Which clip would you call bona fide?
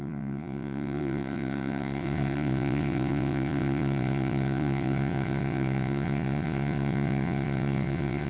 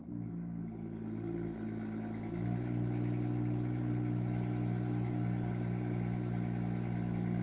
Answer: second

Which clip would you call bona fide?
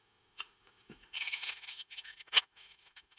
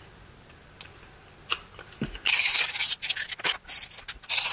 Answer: second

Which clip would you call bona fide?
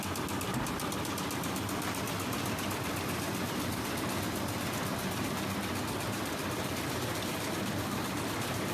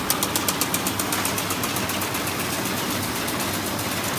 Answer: second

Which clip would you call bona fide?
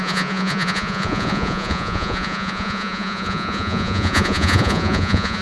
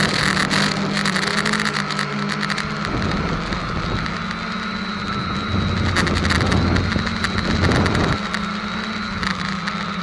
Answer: second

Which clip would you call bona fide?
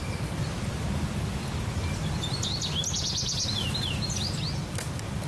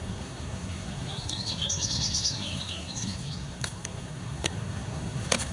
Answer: first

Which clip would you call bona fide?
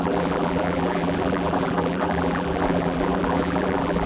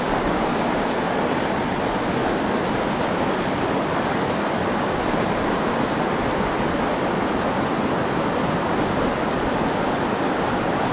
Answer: second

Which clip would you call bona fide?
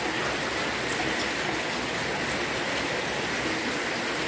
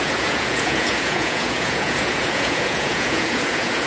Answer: first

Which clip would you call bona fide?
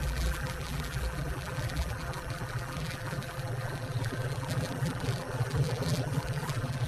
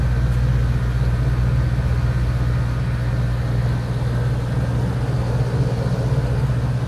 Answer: second